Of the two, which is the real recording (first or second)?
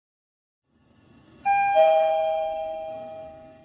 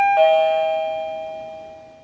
second